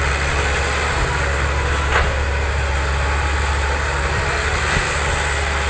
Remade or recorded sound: recorded